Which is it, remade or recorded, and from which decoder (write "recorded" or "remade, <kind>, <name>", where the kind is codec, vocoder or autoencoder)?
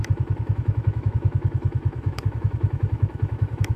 remade, autoencoder, DAC-VAE